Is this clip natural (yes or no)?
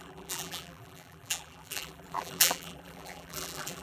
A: no